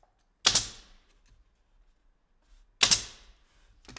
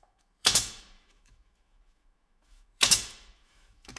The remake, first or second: second